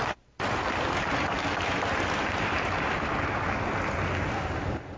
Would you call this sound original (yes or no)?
yes